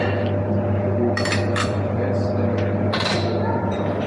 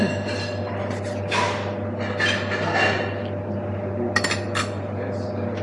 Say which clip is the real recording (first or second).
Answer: second